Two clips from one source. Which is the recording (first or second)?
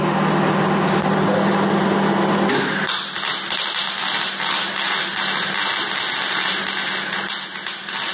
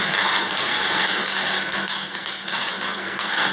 first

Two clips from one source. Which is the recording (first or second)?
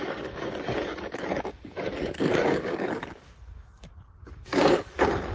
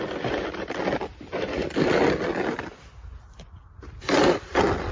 second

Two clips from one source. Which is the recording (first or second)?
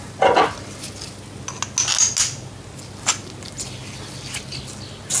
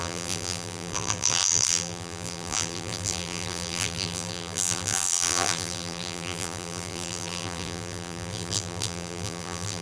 first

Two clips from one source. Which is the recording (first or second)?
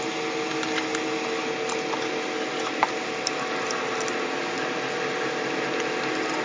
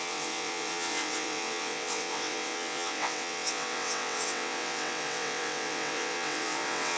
first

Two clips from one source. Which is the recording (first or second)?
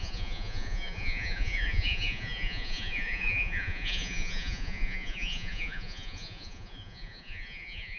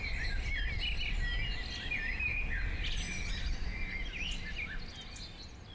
second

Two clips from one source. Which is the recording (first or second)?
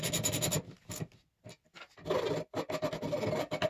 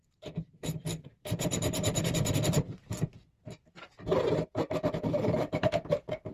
first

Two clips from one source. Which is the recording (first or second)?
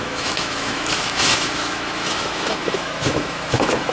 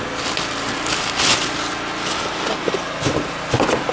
second